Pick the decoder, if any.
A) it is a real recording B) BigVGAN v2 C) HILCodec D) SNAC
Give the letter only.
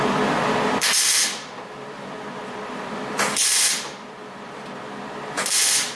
B